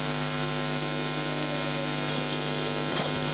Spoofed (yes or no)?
no